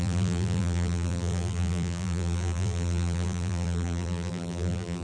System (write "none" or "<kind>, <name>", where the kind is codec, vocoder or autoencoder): vocoder, BigVGAN v2